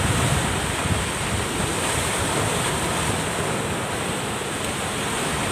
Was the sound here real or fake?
real